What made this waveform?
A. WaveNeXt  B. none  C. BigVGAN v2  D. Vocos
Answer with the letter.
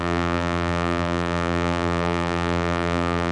C